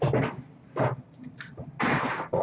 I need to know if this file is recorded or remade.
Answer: recorded